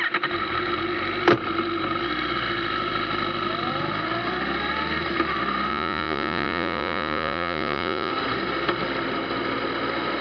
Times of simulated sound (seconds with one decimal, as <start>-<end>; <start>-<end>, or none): 5.7-8.1